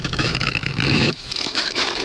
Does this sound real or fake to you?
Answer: fake